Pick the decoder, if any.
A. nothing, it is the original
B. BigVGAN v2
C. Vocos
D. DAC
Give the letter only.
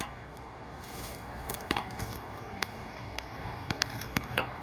D